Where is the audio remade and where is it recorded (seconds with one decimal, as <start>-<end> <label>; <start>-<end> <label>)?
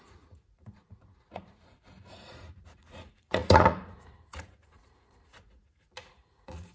0.0-6.7 remade